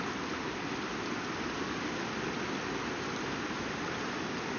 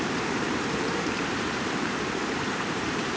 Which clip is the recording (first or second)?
first